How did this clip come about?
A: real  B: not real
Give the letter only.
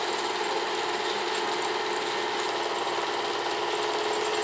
A